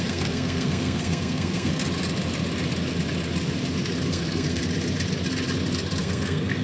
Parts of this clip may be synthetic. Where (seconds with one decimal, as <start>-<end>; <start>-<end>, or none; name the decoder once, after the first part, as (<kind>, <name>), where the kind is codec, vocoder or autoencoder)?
0.0-1.7 (codec, SNAC); 4.1-4.6; 6.0-6.6